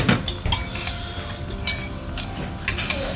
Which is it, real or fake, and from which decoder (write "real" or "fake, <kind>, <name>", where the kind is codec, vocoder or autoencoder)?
real